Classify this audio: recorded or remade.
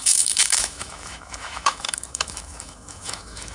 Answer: remade